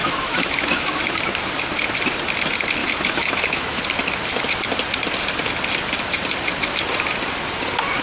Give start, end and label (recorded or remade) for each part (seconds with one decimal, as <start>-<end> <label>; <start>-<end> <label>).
0.0-1.0 remade; 1.0-2.8 recorded; 2.8-3.8 remade; 3.8-8.0 recorded